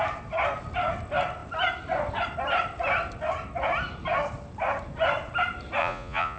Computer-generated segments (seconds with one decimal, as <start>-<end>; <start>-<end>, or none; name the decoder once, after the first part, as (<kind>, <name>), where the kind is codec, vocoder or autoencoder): 5.8-6.4 (vocoder, Vocos)